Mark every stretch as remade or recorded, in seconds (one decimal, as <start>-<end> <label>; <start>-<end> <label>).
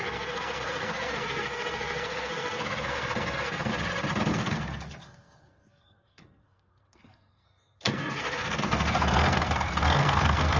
0.0-3.7 remade; 3.7-4.3 recorded; 4.3-10.6 remade